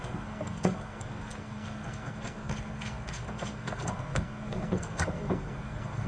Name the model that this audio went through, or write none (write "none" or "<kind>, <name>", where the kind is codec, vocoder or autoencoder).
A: codec, SNAC